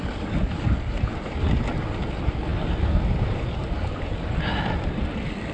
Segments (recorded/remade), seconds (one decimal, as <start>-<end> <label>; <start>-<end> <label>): 0.0-2.5 remade; 2.5-3.6 recorded; 3.6-5.5 remade